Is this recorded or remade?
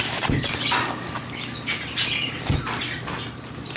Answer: recorded